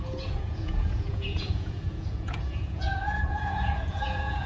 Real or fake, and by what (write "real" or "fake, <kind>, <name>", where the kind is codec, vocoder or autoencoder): fake, vocoder, Vocos